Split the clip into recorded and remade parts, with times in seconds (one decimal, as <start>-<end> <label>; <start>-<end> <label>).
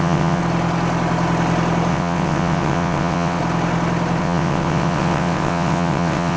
0.0-0.4 remade; 0.4-1.9 recorded; 1.9-3.4 remade; 3.4-4.2 recorded; 4.2-6.4 remade